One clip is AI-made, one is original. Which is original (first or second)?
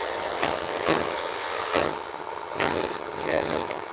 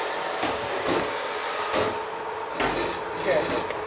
second